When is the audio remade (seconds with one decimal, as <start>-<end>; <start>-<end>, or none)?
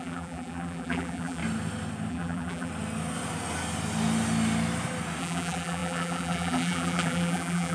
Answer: 0.0-1.4; 2.1-2.7; 5.2-7.7